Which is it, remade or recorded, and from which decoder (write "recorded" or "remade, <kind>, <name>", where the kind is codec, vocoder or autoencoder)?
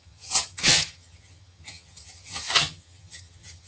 remade, vocoder, HiFi-GAN